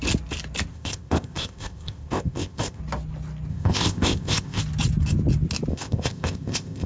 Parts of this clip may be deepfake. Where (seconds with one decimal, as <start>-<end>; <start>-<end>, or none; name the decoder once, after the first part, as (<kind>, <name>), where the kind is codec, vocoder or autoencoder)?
0.7-2.8 (codec, ZipCodec); 3.5-4.6; 5.7-6.9